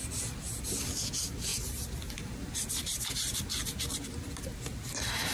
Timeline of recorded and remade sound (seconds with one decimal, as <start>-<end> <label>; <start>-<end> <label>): 0.0-0.7 remade; 0.7-1.5 recorded; 1.5-4.4 remade; 4.4-5.3 recorded